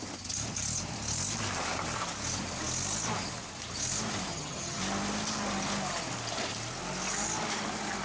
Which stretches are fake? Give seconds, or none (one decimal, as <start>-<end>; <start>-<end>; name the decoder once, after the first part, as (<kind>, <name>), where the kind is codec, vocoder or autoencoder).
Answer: 4.3-4.8 (vocoder, HiFi-GAN)